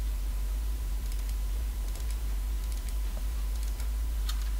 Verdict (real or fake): fake